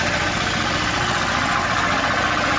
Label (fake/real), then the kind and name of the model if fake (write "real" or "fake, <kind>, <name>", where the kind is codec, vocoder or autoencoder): real